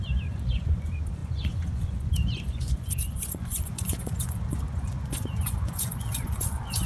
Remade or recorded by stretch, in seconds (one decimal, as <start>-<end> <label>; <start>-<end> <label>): 0.0-6.9 remade